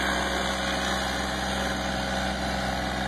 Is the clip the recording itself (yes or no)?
yes